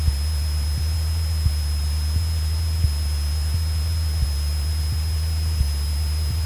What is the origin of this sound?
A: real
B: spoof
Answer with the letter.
A